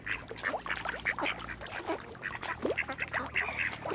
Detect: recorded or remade recorded